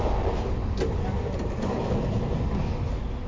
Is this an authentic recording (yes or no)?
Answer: yes